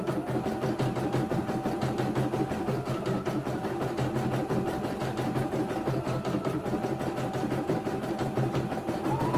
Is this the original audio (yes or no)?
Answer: yes